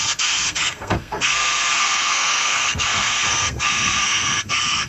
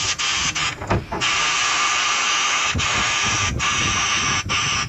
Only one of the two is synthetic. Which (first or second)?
first